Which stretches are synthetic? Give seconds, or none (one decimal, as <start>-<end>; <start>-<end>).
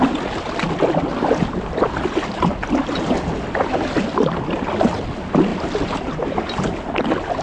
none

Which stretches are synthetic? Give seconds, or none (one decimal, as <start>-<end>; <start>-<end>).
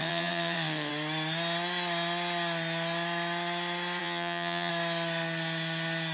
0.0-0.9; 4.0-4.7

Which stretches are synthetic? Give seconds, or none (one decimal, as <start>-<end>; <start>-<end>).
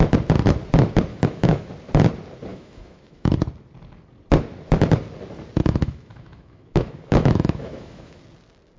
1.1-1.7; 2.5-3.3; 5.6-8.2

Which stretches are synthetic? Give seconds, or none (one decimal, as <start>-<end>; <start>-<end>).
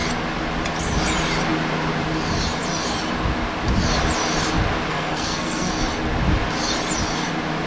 4.9-5.7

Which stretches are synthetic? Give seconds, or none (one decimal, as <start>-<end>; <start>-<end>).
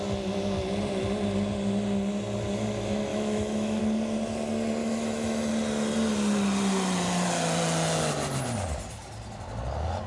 3.1-3.8; 4.8-5.5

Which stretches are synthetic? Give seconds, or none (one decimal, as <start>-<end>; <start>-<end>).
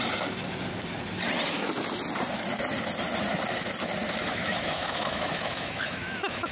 4.2-6.5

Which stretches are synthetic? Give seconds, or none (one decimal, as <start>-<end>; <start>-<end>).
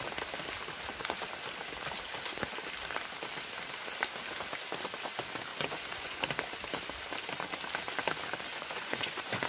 5.5-6.2; 8.5-9.5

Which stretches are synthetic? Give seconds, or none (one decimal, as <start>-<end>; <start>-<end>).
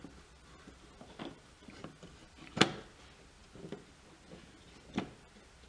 none